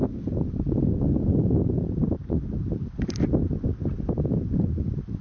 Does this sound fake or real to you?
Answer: real